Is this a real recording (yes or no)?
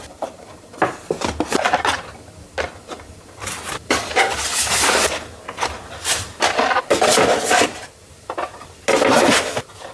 yes